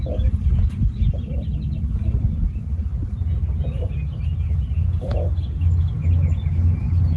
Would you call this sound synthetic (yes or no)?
no